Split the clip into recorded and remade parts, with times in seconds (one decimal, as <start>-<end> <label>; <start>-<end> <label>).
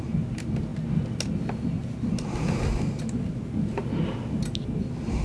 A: 0.0-5.2 recorded